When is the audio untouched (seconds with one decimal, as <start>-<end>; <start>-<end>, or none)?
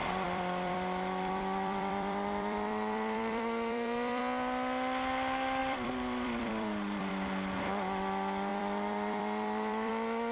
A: 4.2-5.6; 7.1-8.5; 9.9-10.3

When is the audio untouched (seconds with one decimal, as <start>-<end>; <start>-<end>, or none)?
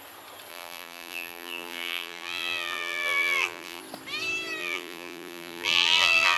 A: 0.0-0.5; 3.8-4.6